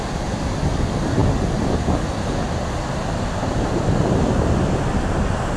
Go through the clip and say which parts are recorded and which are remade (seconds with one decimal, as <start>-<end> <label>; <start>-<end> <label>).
0.0-5.6 recorded